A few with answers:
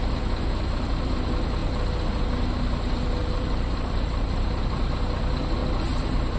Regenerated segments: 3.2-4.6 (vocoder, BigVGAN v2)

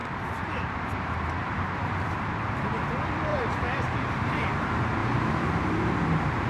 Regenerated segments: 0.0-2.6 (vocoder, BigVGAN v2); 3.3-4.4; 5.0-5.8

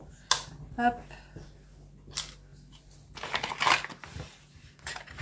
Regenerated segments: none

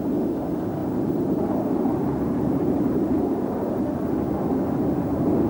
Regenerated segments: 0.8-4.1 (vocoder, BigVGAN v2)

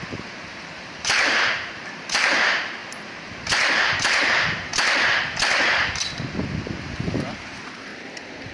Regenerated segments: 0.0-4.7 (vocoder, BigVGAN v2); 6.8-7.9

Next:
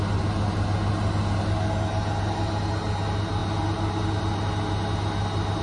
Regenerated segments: none